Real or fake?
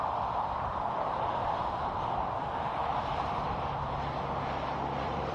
fake